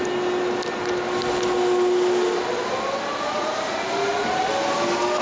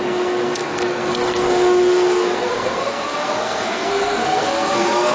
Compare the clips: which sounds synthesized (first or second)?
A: second